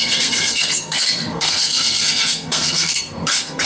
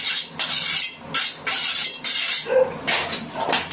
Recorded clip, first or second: second